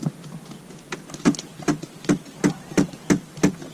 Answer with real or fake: real